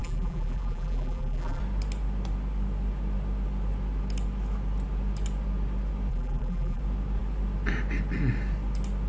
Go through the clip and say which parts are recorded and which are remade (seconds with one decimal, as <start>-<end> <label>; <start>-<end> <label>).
0.0-1.6 remade; 1.6-6.1 recorded; 6.1-6.8 remade; 6.8-9.1 recorded